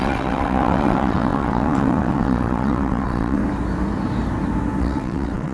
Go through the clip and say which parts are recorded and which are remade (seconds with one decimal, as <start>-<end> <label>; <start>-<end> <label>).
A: 0.0-3.4 remade; 3.4-4.8 recorded; 4.8-5.5 remade